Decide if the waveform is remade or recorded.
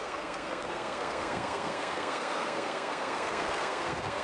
remade